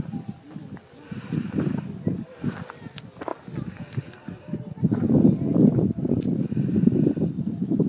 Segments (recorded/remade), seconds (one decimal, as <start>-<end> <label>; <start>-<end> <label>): 0.0-3.3 remade; 3.3-4.2 recorded; 4.2-7.9 remade